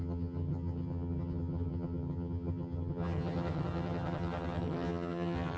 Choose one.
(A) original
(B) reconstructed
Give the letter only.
B